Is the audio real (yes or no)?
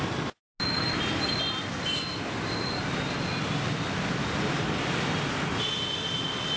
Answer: yes